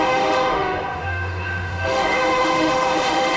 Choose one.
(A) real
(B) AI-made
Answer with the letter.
B